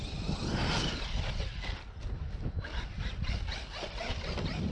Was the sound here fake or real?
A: real